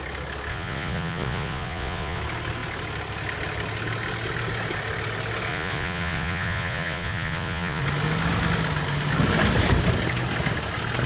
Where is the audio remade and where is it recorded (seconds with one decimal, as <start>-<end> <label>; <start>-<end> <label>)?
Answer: 0.0-0.5 recorded; 0.5-2.2 remade; 2.2-5.5 recorded; 5.5-7.8 remade; 7.8-11.1 recorded